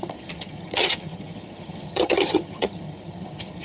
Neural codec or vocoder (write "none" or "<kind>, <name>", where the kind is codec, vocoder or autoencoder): vocoder, HiFi-GAN